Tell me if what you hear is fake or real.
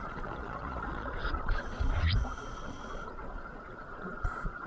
fake